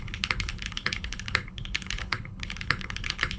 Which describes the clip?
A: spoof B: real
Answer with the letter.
A